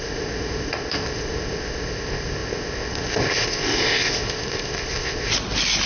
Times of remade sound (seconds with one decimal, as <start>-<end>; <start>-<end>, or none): 0.0-5.3